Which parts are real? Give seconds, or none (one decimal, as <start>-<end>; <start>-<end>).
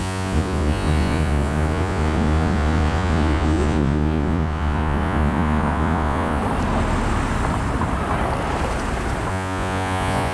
6.4-9.3